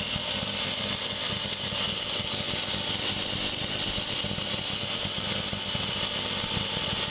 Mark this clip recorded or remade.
recorded